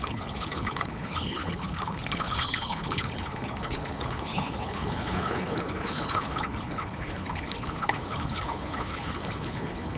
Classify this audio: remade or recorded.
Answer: remade